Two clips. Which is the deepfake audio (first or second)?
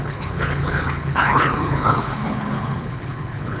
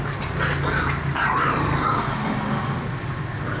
first